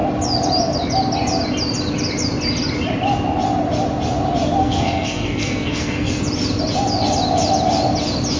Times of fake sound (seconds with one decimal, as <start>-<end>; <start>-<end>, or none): 4.6-6.2